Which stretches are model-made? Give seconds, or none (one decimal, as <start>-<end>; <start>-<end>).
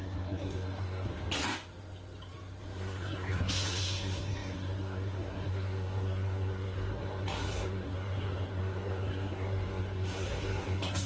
0.0-1.1; 2.6-11.1